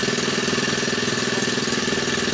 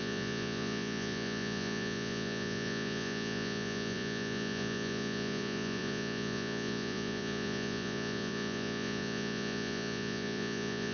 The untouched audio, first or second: first